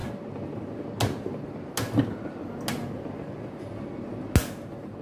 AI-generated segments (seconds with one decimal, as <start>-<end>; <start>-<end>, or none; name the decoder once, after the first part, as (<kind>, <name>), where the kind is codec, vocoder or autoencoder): none